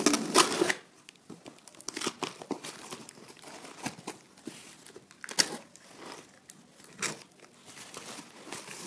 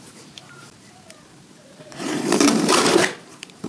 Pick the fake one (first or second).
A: second